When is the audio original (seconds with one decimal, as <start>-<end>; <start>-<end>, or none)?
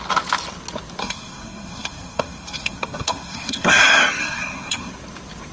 0.0-1.0; 3.8-4.2; 4.9-5.5